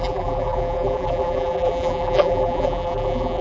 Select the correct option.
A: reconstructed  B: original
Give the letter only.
A